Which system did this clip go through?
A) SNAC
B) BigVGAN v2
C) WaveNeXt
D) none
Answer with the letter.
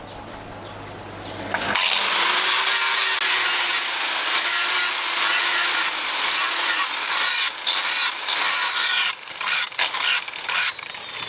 D